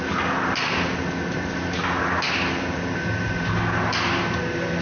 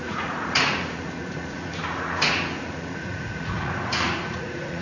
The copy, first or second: second